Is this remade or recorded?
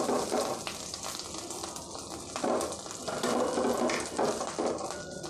recorded